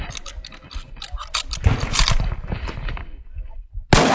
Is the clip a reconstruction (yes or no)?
no